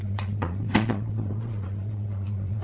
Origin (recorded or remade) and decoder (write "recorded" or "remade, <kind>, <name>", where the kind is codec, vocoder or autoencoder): remade, vocoder, Vocos